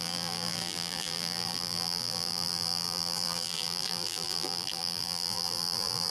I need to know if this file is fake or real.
fake